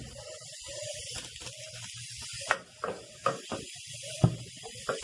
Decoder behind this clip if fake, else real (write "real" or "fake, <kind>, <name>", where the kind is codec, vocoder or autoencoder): real